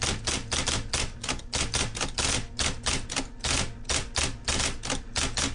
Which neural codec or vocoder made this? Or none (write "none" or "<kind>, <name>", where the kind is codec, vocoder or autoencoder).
none